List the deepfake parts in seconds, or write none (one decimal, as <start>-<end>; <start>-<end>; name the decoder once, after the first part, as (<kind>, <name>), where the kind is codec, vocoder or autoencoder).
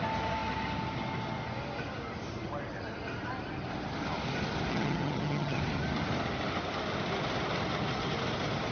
4.7-5.6 (vocoder, HiFi-GAN)